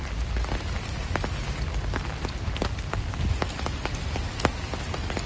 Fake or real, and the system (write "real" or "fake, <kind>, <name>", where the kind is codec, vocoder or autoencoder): real